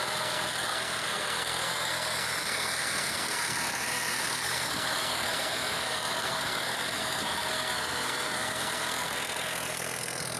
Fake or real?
fake